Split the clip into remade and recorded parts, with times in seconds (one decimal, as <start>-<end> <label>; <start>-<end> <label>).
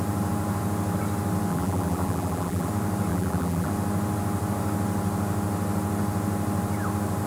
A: 0.0-1.5 recorded; 1.5-2.7 remade; 2.7-3.1 recorded; 3.1-3.7 remade; 3.7-7.3 recorded